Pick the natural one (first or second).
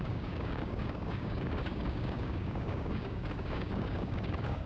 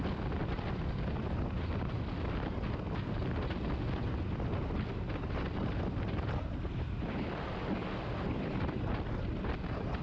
second